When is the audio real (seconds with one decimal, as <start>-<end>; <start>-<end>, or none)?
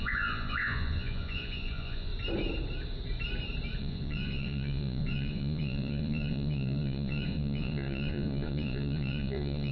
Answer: 2.1-3.8